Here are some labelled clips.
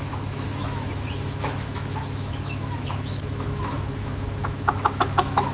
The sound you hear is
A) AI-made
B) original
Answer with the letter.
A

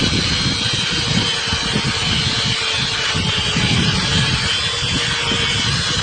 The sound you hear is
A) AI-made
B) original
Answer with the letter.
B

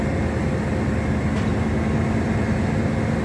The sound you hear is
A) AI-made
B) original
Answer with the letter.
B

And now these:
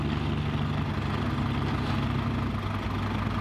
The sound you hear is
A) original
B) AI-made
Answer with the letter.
A